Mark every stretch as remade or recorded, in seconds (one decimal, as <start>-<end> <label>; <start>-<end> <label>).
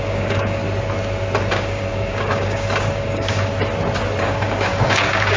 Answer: 0.0-0.6 remade; 0.6-1.5 recorded; 1.5-3.5 remade; 3.5-4.2 recorded; 4.2-5.4 remade